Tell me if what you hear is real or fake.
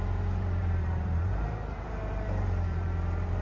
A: fake